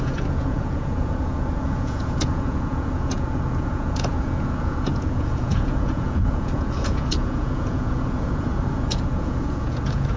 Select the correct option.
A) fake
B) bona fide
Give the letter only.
A